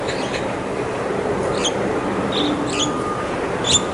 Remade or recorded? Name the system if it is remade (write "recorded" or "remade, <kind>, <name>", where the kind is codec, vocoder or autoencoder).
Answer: recorded